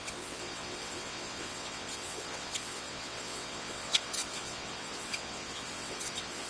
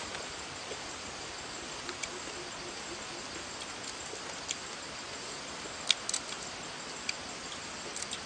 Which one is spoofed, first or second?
first